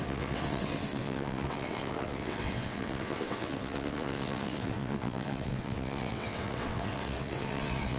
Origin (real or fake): fake